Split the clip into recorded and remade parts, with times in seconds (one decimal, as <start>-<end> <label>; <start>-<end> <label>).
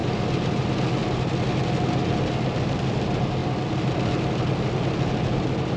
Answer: 0.0-5.8 recorded